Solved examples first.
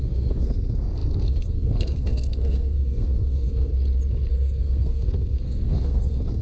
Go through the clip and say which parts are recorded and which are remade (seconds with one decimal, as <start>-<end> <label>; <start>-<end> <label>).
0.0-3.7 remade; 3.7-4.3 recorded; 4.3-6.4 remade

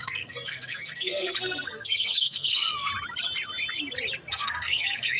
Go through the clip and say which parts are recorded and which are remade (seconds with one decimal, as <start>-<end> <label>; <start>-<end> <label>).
0.0-2.9 remade; 2.9-4.3 recorded; 4.3-5.2 remade

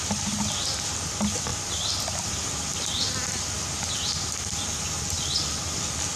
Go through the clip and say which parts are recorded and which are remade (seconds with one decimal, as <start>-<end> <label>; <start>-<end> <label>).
0.0-6.2 recorded

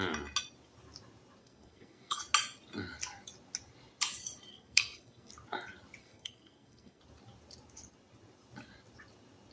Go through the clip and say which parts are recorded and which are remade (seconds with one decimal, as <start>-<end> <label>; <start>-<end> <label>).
0.0-1.4 recorded; 1.4-2.2 remade; 2.2-4.5 recorded; 4.5-5.3 remade; 5.3-6.0 recorded; 6.0-7.0 remade; 7.0-9.5 recorded